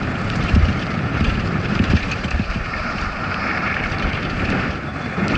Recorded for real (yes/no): no